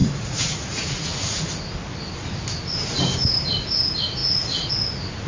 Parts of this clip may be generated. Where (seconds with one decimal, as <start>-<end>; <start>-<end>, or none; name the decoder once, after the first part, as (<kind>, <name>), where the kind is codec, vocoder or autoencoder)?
0.0-1.5 (vocoder, Vocos)